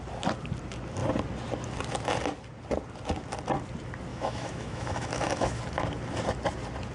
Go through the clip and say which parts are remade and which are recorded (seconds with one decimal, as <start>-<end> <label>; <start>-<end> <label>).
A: 0.0-4.1 recorded; 4.1-5.6 remade; 5.6-6.9 recorded